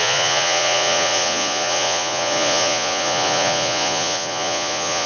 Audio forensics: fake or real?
fake